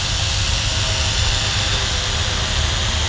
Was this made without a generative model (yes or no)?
yes